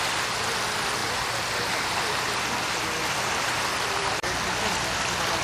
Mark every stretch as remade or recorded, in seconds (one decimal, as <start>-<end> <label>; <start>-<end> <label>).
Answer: 0.0-5.4 recorded

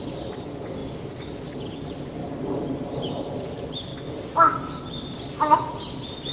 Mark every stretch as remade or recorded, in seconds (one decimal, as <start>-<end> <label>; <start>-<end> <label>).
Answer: 0.0-3.9 recorded; 3.9-5.3 remade; 5.3-6.3 recorded

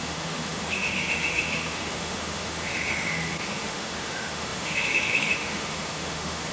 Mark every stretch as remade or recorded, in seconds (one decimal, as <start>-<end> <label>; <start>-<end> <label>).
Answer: 0.0-6.5 remade

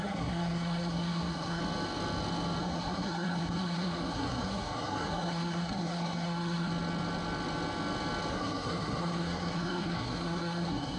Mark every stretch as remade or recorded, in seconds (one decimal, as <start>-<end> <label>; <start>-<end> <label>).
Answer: 0.0-1.6 remade; 1.6-2.6 recorded; 2.6-6.7 remade; 6.7-8.3 recorded; 8.3-11.0 remade